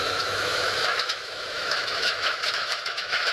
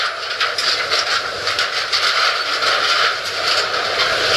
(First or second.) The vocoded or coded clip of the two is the first